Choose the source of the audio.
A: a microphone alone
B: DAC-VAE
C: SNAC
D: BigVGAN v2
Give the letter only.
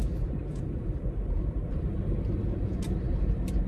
D